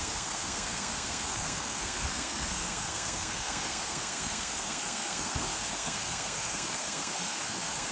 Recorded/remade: remade